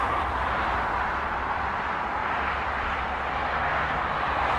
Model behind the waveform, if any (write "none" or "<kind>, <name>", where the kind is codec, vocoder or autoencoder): none